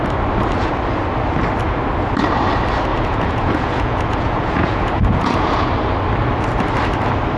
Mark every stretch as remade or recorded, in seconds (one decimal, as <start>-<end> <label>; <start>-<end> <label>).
0.0-2.9 recorded; 2.9-5.7 remade; 5.7-7.4 recorded